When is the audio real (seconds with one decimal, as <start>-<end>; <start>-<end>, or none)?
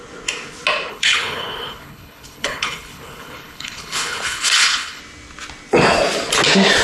0.0-0.9; 5.0-6.8